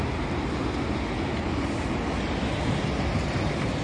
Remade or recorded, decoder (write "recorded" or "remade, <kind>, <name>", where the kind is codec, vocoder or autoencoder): recorded